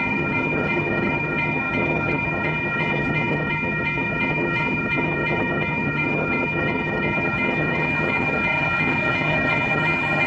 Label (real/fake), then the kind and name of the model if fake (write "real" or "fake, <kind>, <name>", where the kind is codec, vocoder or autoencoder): fake, vocoder, HiFi-GAN